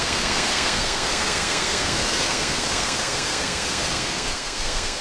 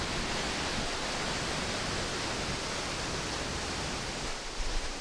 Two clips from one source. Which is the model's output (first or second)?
first